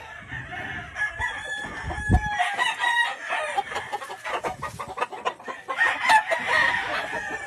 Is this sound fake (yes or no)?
no